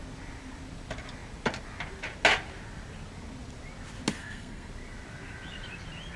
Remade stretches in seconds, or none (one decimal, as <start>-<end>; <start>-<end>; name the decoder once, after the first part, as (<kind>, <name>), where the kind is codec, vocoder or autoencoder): 4.2-4.7 (codec, SNAC)